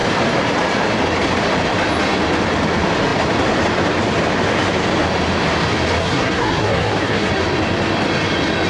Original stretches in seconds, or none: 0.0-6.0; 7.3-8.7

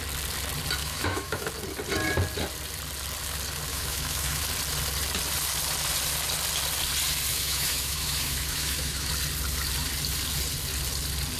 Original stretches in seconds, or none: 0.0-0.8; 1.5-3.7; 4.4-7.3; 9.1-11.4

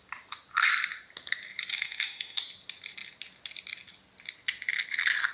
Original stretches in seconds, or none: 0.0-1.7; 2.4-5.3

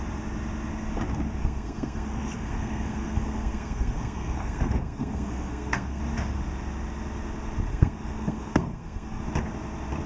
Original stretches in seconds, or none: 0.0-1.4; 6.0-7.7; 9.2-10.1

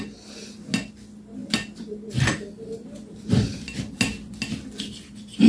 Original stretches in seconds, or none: 0.0-5.5